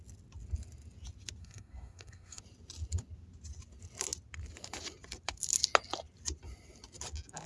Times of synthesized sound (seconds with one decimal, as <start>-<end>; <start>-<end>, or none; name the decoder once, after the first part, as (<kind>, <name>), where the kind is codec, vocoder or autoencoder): 1.4-2.4 (codec, SNAC)